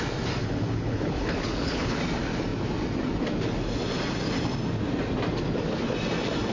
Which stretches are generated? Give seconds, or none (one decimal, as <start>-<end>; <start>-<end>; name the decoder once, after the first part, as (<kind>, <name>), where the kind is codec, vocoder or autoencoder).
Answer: 0.4-2.0 (codec, HILCodec)